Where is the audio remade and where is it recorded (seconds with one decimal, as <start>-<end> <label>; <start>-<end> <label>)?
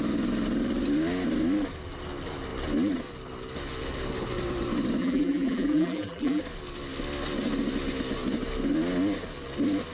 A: 0.0-5.0 recorded; 5.0-6.4 remade; 6.4-9.9 recorded